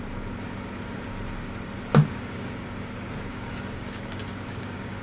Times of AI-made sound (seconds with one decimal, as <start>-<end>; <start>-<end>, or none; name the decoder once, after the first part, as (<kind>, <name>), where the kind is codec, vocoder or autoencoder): 1.9-2.5 (codec, DAC); 3.3-5.0